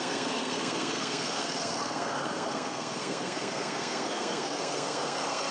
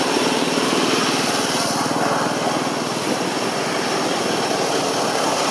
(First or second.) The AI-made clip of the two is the first